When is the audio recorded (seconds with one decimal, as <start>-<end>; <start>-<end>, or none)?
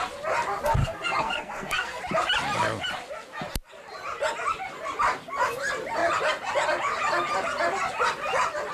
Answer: 0.0-0.8; 2.0-8.7